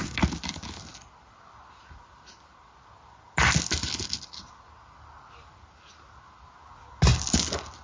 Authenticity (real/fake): real